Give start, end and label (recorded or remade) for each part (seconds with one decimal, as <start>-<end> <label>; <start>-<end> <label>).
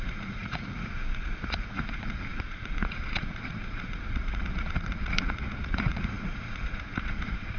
0.0-7.6 remade